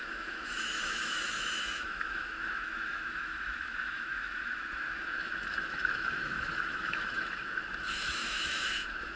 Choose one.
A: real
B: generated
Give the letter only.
B